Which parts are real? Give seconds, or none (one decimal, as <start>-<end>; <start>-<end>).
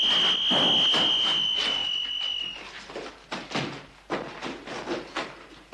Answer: 0.0-5.7